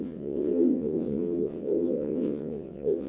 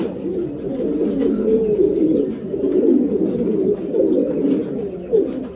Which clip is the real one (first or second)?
second